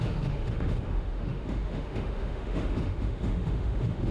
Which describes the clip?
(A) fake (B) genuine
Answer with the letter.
A